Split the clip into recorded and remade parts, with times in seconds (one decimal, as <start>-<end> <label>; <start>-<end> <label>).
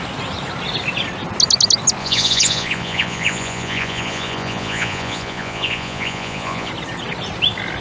0.0-2.0 recorded; 2.0-6.7 remade; 6.7-7.8 recorded